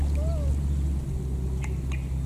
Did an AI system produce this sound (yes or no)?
no